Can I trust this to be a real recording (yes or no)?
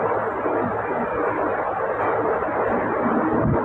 yes